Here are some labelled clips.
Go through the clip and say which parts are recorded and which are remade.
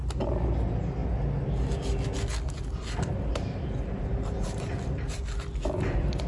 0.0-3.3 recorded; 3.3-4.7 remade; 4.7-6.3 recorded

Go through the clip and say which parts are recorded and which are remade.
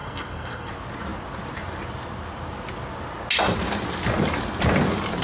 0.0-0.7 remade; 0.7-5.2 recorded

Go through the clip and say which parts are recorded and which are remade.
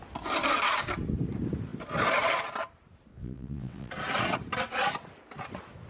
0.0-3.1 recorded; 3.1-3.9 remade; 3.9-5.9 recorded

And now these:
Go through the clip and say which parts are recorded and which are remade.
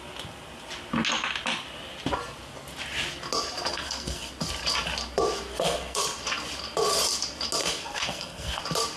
0.0-3.7 recorded; 3.7-4.3 remade; 4.3-5.5 recorded; 5.5-6.0 remade; 6.0-7.6 recorded; 7.6-8.6 remade; 8.6-9.0 recorded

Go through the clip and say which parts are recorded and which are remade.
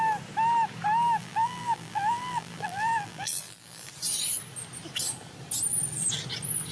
0.0-1.2 recorded; 1.2-3.9 remade; 3.9-6.7 recorded